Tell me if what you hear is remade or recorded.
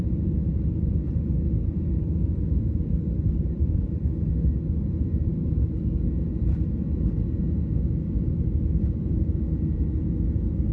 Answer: recorded